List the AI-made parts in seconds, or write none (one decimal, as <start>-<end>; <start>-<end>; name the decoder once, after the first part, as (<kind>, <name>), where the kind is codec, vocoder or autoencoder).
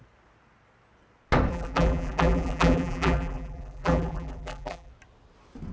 1.5-4.9 (vocoder, BigVGAN v2)